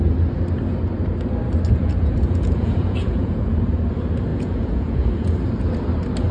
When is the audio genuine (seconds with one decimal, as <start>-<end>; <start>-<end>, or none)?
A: 0.0-1.8; 3.9-4.3; 5.3-6.3